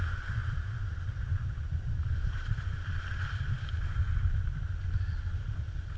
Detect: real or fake real